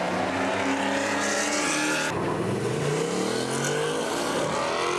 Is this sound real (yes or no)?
yes